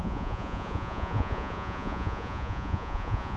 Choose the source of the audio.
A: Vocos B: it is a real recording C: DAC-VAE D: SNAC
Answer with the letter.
A